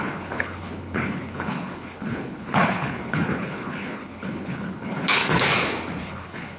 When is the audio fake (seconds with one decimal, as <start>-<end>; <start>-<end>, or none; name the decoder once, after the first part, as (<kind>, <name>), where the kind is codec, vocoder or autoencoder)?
0.0-5.5 (codec, HILCodec); 6.0-6.6